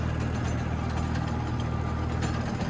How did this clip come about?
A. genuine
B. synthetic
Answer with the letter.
A